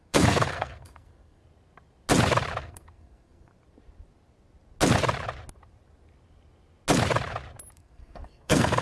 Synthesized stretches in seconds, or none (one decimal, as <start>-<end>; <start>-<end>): 0.0-1.4; 2.6-3.5; 7.7-8.8